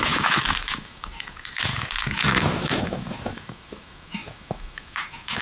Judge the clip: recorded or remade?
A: remade